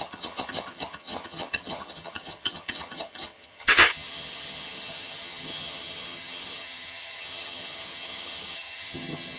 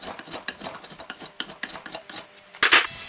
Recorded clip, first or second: second